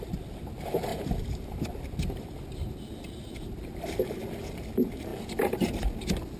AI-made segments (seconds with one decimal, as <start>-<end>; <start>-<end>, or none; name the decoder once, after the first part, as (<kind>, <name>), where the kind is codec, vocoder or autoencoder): 0.9-1.6 (vocoder, BigVGAN v2); 5.1-5.8